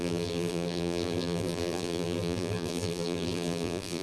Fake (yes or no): yes